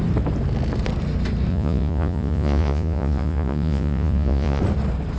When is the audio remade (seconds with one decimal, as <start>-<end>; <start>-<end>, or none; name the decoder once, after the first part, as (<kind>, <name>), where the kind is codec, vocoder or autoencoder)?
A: 1.5-4.6 (vocoder, Vocos)